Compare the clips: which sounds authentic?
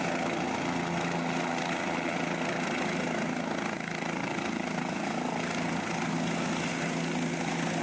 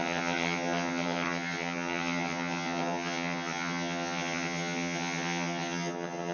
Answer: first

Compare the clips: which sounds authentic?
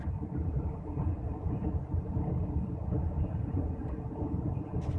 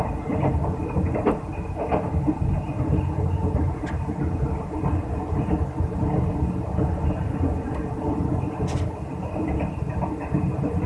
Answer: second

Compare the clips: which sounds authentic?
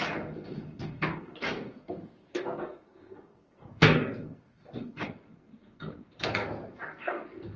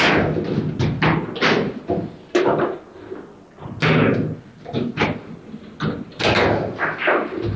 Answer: second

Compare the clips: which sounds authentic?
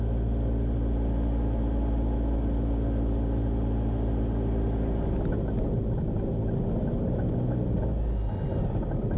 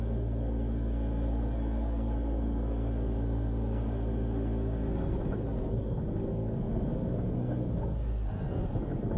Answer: first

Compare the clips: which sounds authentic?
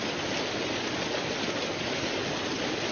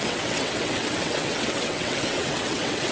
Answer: first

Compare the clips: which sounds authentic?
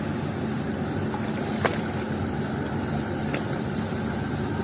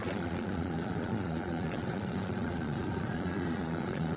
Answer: first